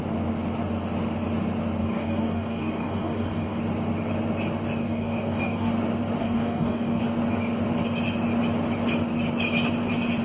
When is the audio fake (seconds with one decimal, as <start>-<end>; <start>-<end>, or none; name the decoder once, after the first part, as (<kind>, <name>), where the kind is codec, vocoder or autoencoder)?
1.8-3.6 (codec, DAC); 4.8-5.7; 6.2-7.0